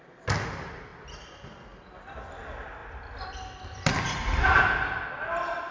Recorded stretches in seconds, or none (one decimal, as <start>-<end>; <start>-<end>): 0.0-5.7